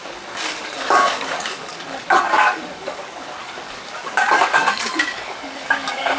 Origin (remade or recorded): remade